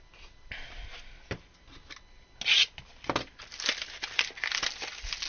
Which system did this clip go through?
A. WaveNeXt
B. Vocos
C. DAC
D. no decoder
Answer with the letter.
D